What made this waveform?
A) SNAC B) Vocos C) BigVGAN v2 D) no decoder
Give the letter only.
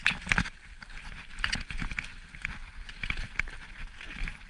D